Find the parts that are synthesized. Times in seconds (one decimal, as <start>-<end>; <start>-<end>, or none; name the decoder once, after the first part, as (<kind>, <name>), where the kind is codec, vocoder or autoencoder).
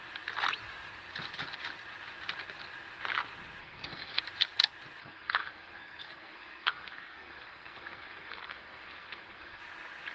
3.6-4.2 (codec, SNAC); 5.0-9.6